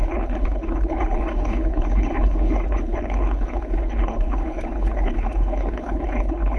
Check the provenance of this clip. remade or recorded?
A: remade